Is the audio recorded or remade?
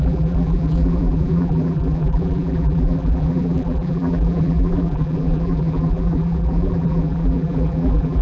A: remade